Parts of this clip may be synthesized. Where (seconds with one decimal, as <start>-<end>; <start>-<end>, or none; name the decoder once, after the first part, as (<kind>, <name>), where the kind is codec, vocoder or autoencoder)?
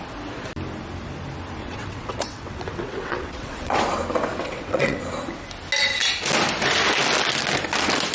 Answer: 1.6-3.8 (vocoder, WaveNeXt); 4.3-5.0